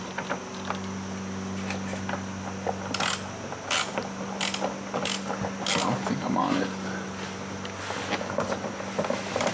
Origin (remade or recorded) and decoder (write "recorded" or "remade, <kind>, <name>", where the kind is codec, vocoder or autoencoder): recorded